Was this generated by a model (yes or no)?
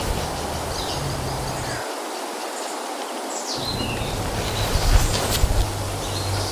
yes